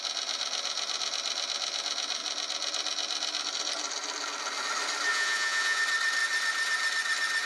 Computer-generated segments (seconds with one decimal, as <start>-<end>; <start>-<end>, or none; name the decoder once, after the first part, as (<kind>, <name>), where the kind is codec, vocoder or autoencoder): 5.1-5.8 (vocoder, Vocos)